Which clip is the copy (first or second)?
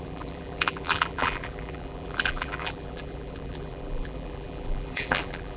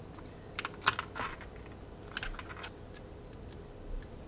first